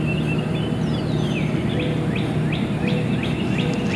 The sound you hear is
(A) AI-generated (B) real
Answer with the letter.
B